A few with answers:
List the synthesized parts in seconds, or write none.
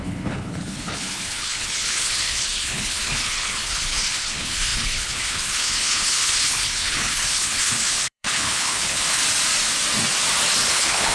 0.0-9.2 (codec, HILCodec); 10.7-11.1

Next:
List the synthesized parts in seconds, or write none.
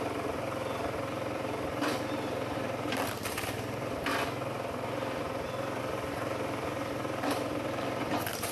0.0-4.1 (vocoder, BigVGAN v2); 5.8-8.5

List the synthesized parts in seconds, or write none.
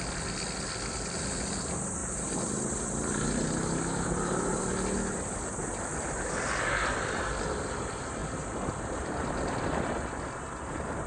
none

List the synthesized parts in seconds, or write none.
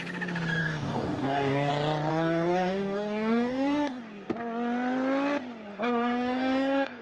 0.6-1.7 (codec, DAC); 2.1-4.0; 5.7-7.0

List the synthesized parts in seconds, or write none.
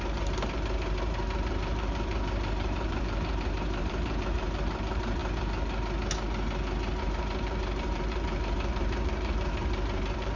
0.0-5.2 (vocoder, BigVGAN v2); 7.0-10.4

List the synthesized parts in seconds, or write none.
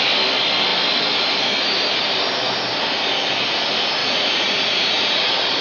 4.0-5.6 (vocoder, Vocos)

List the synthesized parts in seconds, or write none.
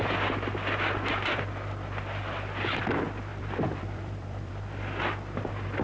3.3-4.5 (vocoder, BigVGAN v2)